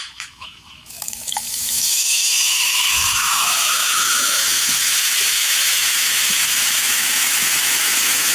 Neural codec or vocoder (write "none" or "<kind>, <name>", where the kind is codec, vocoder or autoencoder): autoencoder, DAC-VAE